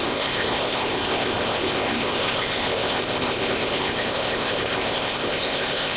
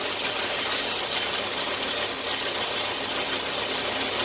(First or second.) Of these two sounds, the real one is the second